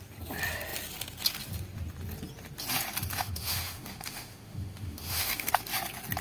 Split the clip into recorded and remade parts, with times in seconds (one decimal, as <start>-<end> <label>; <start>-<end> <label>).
0.0-3.1 recorded; 3.1-5.5 remade; 5.5-6.2 recorded